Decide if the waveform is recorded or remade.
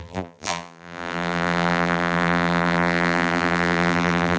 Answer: remade